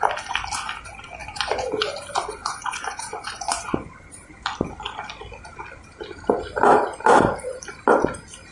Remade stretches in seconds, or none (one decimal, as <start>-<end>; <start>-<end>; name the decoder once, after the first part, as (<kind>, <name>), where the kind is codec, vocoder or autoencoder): 1.2-1.9 (vocoder, Vocos); 2.4-3.9

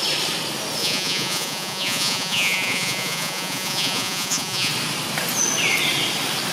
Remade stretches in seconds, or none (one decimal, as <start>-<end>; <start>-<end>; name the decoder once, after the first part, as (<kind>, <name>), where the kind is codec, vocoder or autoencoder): 0.8-4.7 (vocoder, Vocos)

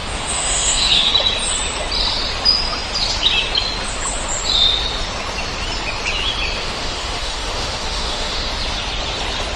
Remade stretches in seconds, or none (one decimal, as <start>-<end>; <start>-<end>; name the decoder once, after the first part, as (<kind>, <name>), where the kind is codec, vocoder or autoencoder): 0.0-1.1 (autoencoder, DAC-VAE); 6.6-8.5

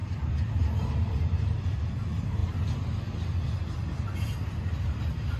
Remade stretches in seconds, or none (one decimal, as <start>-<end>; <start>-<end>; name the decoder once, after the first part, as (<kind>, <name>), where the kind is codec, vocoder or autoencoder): 0.0-1.8 (vocoder, BigVGAN v2)

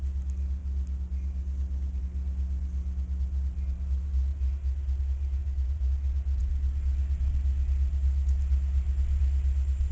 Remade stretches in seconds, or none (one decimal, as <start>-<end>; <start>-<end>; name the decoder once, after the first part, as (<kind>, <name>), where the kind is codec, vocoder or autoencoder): 5.4-5.9 (vocoder, BigVGAN v2)